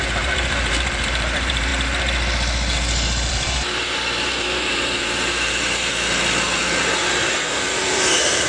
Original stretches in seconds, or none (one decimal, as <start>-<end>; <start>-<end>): 1.7-3.3; 5.9-7.1